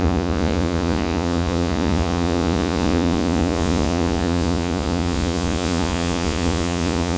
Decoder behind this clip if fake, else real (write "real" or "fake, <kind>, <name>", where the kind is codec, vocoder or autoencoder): fake, vocoder, Vocos